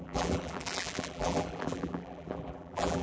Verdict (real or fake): fake